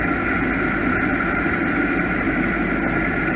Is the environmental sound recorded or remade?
recorded